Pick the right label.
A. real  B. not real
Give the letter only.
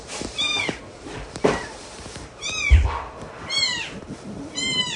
B